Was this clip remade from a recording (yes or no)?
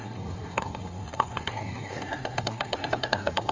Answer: yes